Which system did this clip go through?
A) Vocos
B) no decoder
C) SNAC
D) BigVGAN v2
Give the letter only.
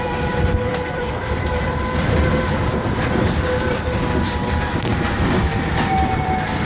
D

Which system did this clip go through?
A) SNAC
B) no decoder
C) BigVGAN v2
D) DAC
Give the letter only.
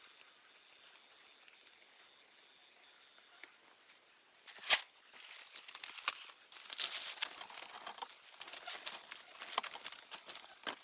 B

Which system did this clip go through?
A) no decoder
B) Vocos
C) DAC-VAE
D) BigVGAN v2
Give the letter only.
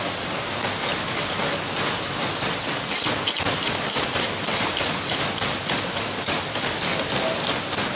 A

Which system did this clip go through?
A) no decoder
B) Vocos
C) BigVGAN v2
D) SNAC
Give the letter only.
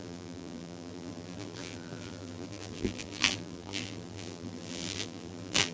C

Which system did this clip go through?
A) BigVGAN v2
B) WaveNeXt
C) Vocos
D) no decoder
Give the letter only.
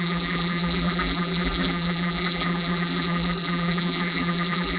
A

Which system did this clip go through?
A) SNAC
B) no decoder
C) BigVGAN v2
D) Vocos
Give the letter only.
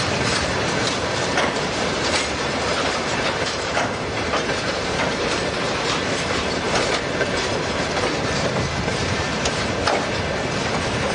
C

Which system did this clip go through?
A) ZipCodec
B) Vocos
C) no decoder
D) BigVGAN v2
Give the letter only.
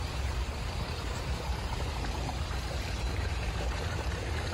D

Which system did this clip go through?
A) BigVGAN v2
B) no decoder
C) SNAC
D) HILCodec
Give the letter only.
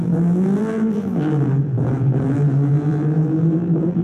A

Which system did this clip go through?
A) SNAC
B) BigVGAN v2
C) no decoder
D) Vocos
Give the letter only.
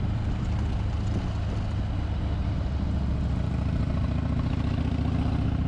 C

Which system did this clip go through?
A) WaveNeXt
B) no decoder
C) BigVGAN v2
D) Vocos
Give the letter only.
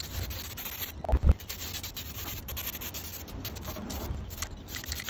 C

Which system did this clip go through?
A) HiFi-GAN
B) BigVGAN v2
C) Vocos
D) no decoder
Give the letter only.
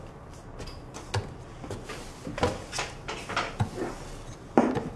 D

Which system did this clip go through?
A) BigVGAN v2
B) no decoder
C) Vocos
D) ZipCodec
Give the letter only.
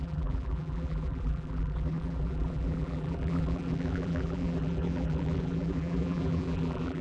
A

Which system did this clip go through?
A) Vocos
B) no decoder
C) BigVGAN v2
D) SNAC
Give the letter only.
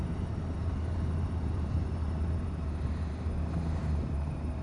C